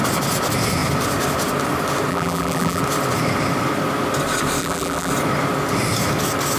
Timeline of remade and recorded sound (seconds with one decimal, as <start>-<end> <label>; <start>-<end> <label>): 0.0-2.1 recorded; 2.1-2.8 remade; 2.8-4.6 recorded; 4.6-5.1 remade; 5.1-6.6 recorded